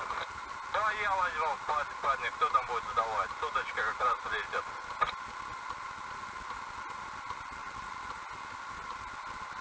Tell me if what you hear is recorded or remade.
recorded